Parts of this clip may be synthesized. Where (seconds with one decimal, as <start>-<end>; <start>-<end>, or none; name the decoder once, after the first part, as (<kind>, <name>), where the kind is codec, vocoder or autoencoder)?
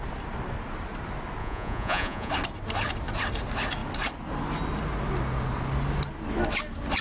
1.4-2.3 (vocoder, Vocos)